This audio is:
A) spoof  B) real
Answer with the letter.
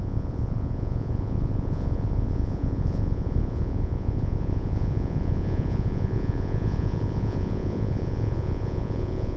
A